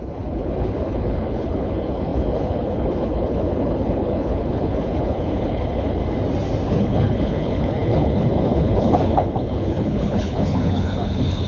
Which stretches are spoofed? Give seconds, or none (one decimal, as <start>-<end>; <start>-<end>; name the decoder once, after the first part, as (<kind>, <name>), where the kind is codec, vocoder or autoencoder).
0.0-6.0 (codec, HILCodec); 6.7-11.5